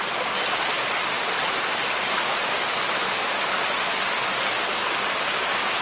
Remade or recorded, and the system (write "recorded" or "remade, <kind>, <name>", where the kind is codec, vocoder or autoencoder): recorded